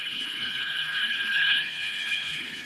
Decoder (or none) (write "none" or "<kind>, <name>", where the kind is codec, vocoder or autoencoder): codec, HILCodec